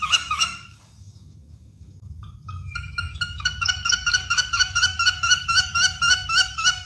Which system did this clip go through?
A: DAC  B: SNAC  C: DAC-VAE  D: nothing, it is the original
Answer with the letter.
A